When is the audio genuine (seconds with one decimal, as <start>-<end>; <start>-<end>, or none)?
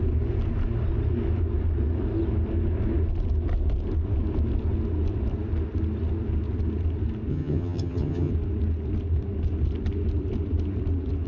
0.0-7.3; 8.3-11.3